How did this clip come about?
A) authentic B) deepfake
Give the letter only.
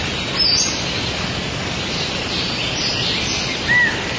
A